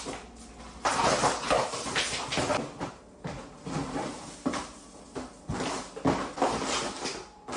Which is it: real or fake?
real